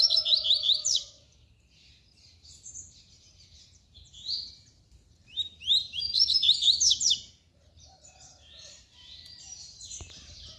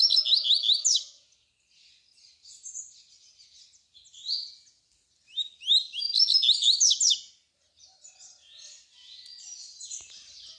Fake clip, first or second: first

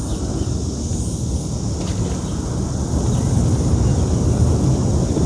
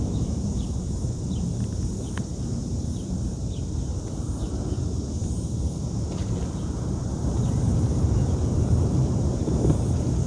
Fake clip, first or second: second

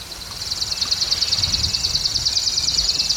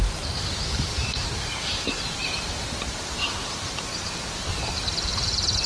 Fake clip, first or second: second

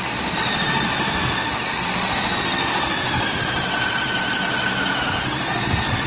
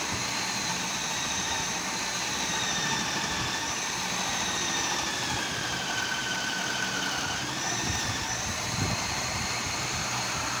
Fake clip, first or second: second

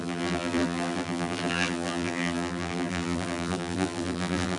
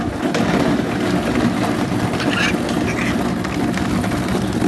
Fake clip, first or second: first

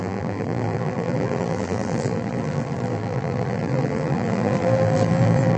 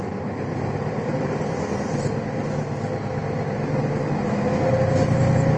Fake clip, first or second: first